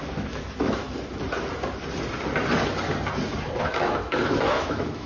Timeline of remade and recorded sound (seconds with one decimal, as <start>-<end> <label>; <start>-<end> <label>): 0.0-0.8 remade; 0.8-3.6 recorded; 3.6-5.1 remade